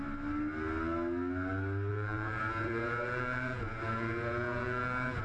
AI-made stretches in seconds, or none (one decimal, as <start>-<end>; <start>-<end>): 1.9-5.2